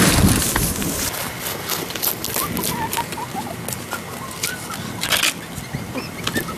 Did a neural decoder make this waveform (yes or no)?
no